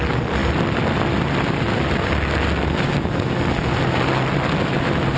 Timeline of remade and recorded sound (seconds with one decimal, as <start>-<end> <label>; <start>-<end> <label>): 0.0-5.2 recorded